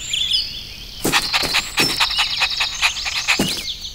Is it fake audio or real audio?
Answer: real